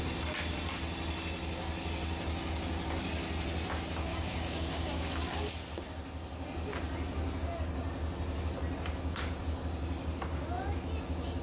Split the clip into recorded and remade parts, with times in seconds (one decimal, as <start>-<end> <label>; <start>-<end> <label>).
0.0-4.1 recorded; 4.1-5.1 remade; 5.1-11.4 recorded